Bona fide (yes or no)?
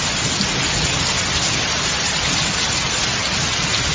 yes